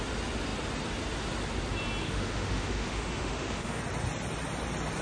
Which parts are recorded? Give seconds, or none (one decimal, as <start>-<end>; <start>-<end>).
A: 0.0-2.0; 3.8-5.0